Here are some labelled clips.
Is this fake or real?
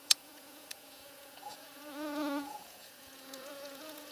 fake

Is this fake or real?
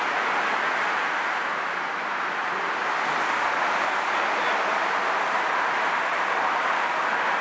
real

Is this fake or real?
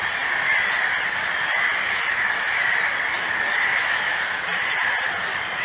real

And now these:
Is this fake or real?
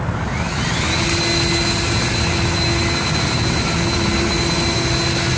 real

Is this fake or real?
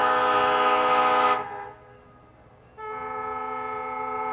real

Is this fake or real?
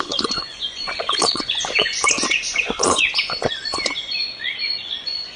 fake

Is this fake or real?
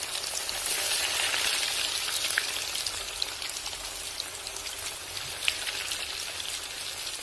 real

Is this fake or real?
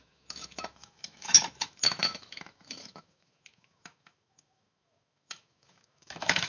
fake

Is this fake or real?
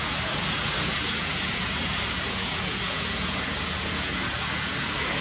fake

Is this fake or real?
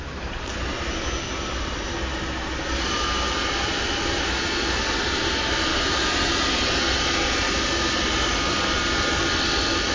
real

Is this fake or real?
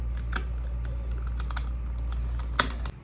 real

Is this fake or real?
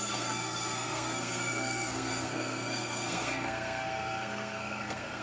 fake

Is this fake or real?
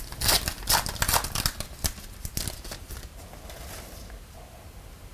real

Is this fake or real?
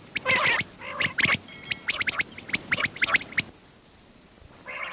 real